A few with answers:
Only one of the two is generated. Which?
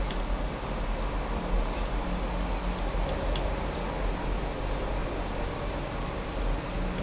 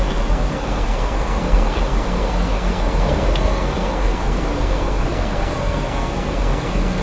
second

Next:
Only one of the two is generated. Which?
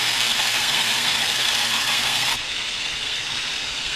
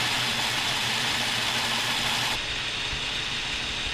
first